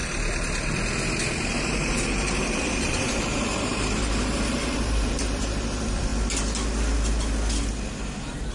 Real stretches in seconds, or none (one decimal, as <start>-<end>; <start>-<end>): 0.0-1.5; 6.1-8.0